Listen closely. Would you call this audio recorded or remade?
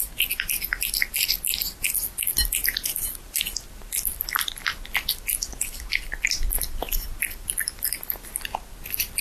recorded